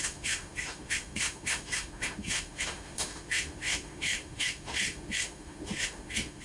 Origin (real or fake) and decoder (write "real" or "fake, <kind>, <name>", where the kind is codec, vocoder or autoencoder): fake, autoencoder, DAC-VAE